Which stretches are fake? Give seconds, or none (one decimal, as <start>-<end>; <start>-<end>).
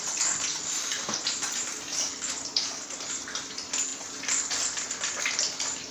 none